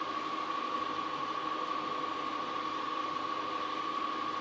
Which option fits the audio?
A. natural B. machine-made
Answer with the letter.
B